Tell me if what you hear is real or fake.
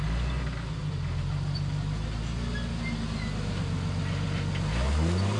real